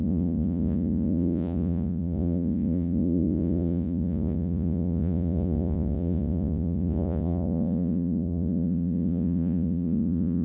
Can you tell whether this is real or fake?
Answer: fake